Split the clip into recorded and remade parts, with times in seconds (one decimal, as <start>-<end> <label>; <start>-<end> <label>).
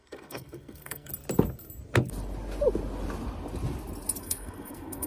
0.0-1.1 remade; 1.1-4.2 recorded; 4.2-5.1 remade